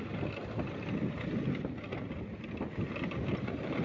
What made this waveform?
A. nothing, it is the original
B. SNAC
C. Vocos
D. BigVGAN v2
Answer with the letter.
A